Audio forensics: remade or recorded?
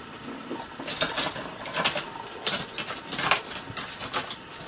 recorded